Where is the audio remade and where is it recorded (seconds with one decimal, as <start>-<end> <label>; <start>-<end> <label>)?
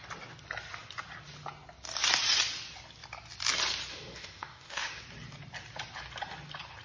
0.0-3.9 recorded; 3.9-5.0 remade; 5.0-6.8 recorded